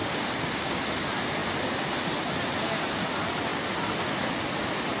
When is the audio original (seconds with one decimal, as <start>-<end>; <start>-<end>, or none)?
0.8-5.0